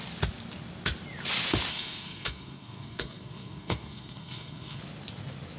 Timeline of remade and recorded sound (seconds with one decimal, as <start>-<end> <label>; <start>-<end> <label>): 0.0-1.7 recorded; 1.7-4.8 remade; 4.8-5.6 recorded